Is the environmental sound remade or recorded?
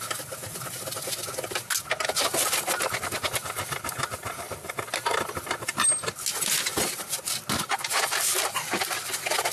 recorded